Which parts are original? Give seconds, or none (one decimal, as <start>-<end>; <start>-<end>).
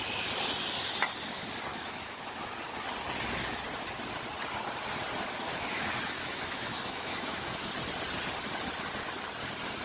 0.0-1.7; 2.5-5.5; 7.6-9.8